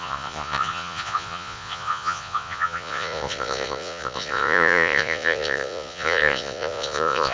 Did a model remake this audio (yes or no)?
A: yes